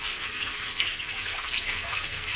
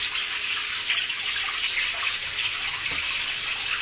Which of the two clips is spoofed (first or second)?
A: first